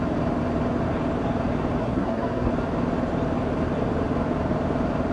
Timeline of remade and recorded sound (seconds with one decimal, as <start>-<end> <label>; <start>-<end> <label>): 0.0-1.8 recorded; 1.8-2.5 remade; 2.5-5.1 recorded